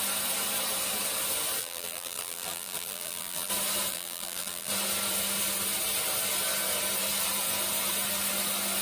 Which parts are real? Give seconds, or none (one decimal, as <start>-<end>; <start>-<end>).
0.0-1.6; 3.5-3.9; 4.7-8.8